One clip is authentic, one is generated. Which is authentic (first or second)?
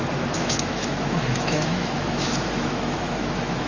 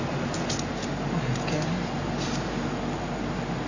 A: second